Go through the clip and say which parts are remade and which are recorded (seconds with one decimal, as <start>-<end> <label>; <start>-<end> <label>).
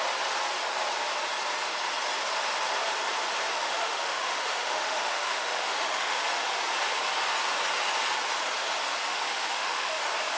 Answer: 0.0-3.5 recorded; 3.5-6.2 remade; 6.2-9.1 recorded; 9.1-10.0 remade; 10.0-10.4 recorded